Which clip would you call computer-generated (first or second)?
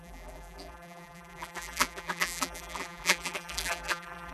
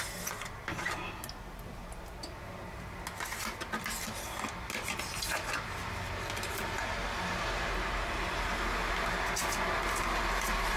first